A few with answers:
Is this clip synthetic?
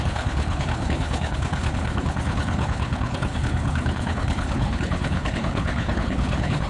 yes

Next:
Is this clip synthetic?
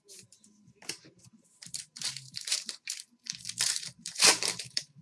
yes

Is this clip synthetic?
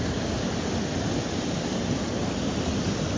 no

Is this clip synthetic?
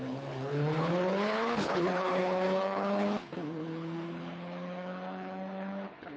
yes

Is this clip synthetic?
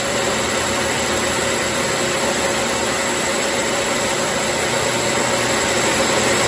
no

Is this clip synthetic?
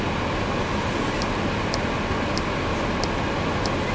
no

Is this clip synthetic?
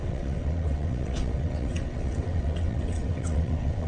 yes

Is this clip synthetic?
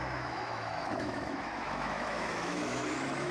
yes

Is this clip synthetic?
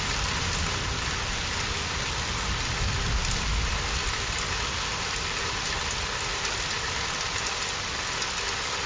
no